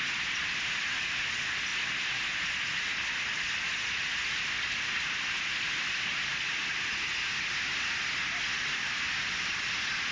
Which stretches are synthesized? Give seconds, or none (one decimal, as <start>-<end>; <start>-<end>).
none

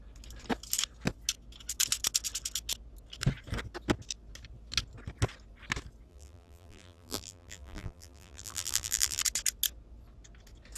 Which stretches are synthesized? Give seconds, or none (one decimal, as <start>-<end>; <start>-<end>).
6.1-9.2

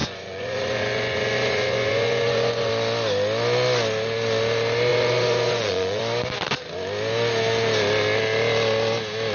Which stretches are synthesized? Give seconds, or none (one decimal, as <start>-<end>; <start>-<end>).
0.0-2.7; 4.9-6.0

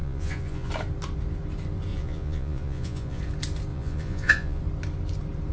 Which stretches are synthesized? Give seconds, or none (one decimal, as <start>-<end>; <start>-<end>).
0.0-0.7; 1.9-3.2; 3.7-4.6

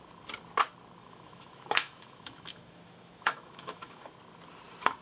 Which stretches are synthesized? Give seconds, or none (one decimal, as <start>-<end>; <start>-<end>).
1.0-4.0